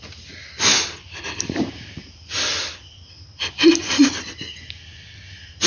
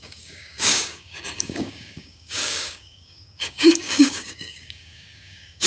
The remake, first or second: second